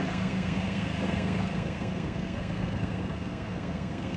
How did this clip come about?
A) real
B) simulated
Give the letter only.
B